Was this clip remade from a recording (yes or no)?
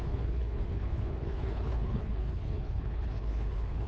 yes